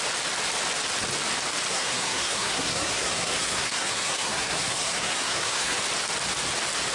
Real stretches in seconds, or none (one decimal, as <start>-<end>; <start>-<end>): 0.0-1.7; 5.8-6.9